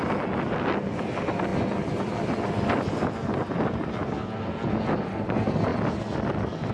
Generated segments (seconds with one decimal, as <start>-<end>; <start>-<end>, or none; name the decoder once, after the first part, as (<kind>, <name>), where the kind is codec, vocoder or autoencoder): none